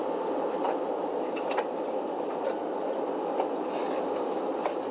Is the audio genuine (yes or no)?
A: yes